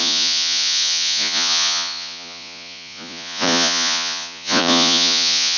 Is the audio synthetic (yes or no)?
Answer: yes